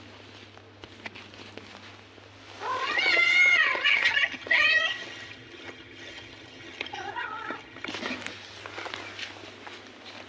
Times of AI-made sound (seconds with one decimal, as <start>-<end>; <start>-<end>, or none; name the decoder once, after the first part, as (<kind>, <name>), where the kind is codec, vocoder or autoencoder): 2.8-7.9 (vocoder, HiFi-GAN)